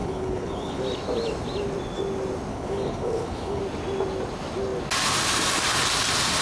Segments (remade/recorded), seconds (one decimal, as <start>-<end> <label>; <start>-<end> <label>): 0.0-0.8 remade; 0.8-2.5 recorded; 2.5-3.6 remade; 3.6-6.4 recorded